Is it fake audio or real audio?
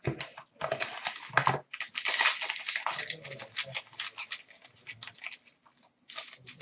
real